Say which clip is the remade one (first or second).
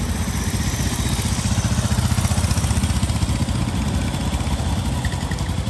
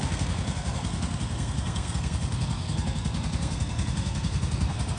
second